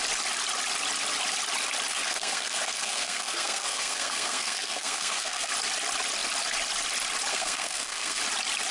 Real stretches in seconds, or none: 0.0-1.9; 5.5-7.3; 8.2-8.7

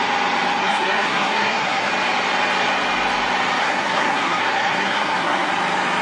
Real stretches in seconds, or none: 0.0-0.6; 1.9-3.6; 5.5-6.0